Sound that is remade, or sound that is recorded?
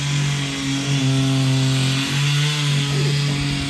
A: recorded